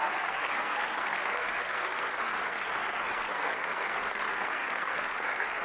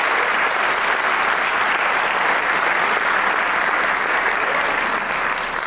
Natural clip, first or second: second